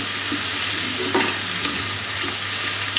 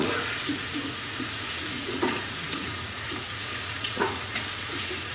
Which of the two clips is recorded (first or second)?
first